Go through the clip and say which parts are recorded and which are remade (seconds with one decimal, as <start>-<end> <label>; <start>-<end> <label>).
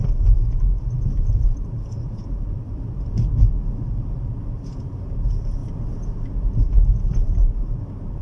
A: 0.0-5.6 remade; 5.6-6.6 recorded; 6.6-8.2 remade